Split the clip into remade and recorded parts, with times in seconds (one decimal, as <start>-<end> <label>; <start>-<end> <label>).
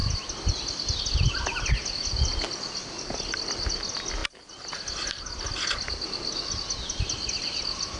0.0-8.0 recorded